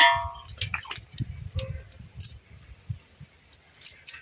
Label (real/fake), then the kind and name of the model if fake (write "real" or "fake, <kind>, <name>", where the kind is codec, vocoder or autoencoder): real